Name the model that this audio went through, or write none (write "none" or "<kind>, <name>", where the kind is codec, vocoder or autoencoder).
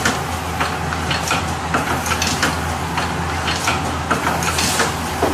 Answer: none